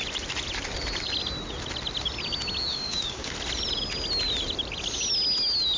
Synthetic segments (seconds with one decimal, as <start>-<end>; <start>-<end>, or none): 2.7-3.3